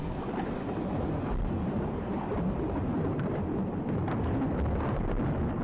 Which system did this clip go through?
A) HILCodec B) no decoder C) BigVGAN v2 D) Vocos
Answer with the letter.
B